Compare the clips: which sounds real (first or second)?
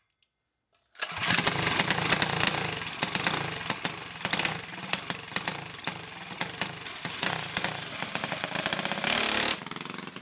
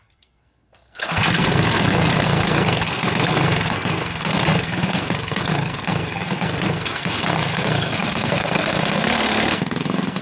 first